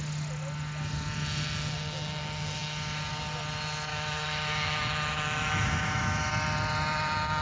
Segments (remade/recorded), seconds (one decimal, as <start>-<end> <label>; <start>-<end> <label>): 0.0-3.9 recorded; 3.9-6.3 remade; 6.3-7.4 recorded